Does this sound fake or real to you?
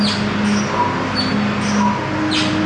real